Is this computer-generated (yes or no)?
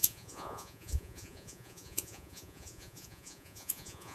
yes